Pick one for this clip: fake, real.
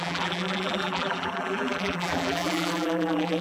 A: fake